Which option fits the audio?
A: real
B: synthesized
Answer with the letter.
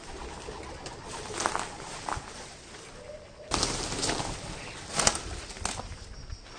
A